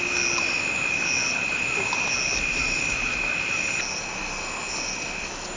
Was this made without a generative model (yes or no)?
yes